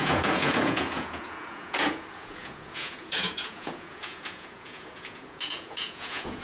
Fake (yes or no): yes